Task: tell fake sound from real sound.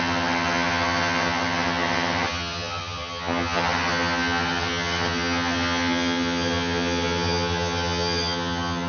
fake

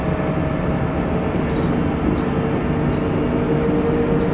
real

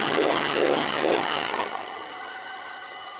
fake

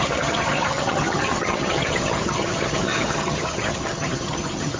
fake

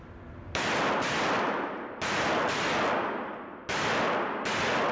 real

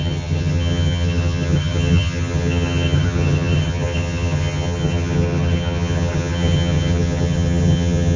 fake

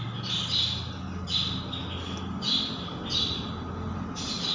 real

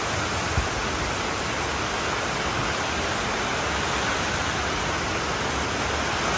real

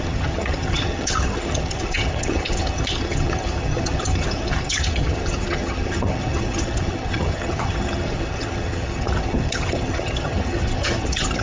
fake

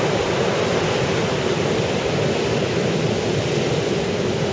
real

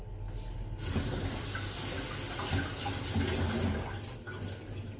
real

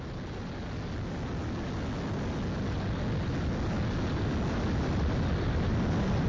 real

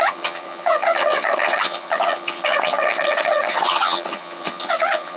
fake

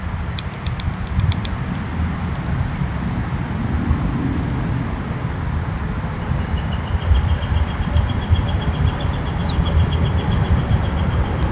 real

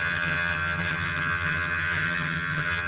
fake